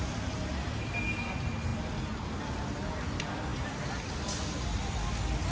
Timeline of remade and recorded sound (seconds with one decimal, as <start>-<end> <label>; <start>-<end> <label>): 0.0-5.5 recorded